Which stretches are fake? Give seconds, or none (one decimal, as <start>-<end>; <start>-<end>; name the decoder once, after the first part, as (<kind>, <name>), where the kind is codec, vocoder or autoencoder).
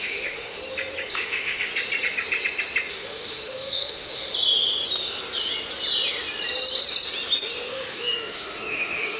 0.0-0.6 (autoencoder, DAC-VAE); 1.1-1.7; 2.9-4.3; 7.7-9.2